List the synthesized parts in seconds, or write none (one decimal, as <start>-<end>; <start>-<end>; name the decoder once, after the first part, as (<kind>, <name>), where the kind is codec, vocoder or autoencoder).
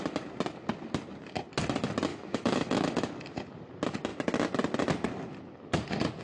2.1-3.1 (autoencoder, DAC-VAE)